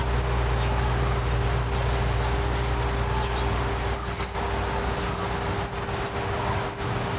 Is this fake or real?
real